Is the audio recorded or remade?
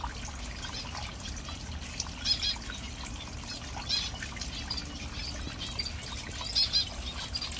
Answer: recorded